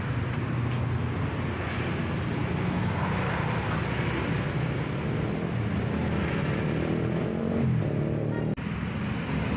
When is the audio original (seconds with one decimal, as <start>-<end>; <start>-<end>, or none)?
0.0-9.6